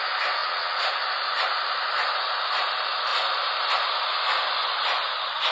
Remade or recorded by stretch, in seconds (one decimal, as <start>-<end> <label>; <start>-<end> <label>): 0.0-0.4 recorded; 0.4-0.9 remade; 0.9-5.5 recorded